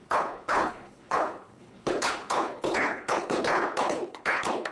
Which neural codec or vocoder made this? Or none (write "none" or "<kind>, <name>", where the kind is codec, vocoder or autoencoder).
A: codec, HILCodec